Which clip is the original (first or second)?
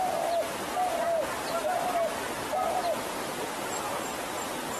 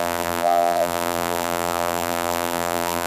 first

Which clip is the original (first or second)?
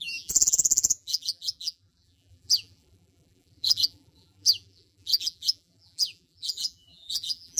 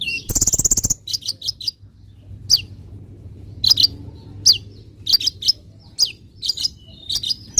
second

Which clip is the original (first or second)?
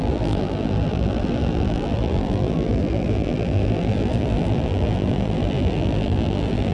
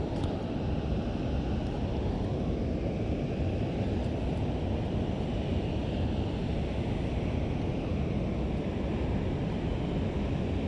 second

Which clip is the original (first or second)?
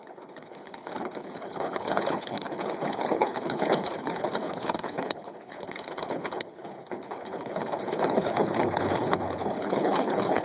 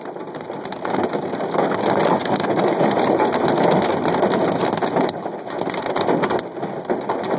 second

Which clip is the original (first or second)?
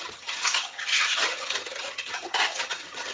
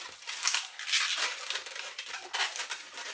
second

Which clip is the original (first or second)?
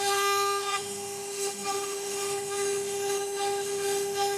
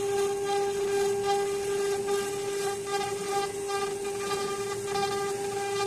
second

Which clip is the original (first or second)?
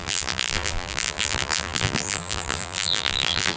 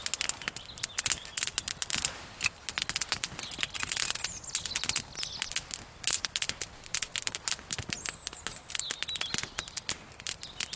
second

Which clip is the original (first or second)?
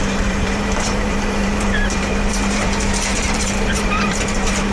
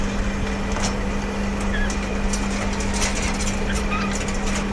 second